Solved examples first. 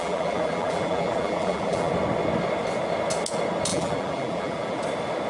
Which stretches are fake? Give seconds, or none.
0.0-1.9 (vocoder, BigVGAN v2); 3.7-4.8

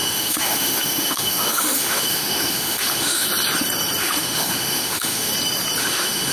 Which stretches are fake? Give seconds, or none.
0.0-3.3 (autoencoder, DAC-VAE); 4.0-5.3; 5.8-6.3

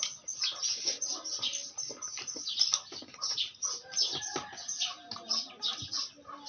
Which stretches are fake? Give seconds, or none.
none

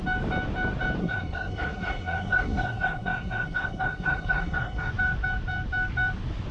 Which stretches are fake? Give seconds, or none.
1.0-4.9 (codec, SNAC)

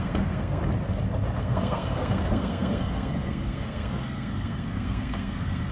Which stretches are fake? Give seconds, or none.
0.0-0.6 (codec, SNAC); 1.4-5.7